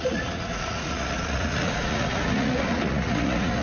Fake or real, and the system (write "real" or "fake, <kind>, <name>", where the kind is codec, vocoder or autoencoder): fake, vocoder, Vocos